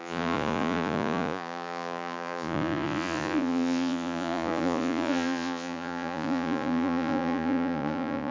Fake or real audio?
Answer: fake